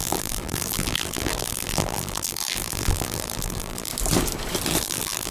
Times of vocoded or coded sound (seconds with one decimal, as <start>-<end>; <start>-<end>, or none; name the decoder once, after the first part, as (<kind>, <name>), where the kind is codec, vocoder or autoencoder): 0.0-3.9 (vocoder, BigVGAN v2); 4.8-5.3